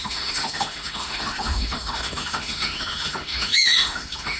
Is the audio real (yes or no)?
no